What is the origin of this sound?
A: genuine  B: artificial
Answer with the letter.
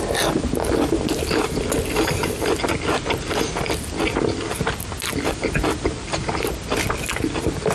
A